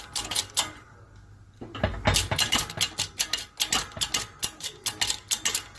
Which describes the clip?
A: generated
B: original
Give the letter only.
B